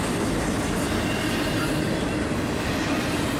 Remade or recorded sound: recorded